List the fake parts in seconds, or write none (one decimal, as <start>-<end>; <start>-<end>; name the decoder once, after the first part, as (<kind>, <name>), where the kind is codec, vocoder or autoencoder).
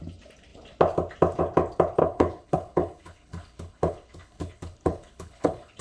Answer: 2.0-5.8 (codec, HILCodec)